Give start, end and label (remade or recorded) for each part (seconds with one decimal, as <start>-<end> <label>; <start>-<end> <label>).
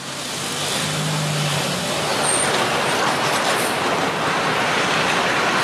0.0-5.6 recorded